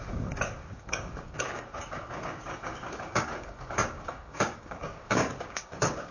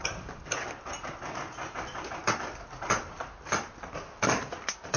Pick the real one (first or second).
second